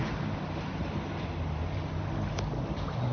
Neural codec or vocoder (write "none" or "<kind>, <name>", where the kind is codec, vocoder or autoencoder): none